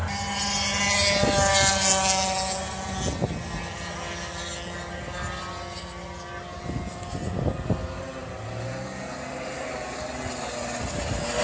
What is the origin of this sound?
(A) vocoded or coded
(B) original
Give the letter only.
B